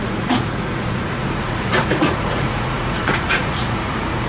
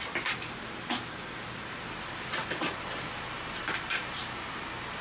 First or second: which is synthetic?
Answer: first